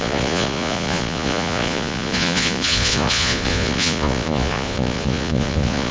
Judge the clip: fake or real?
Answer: fake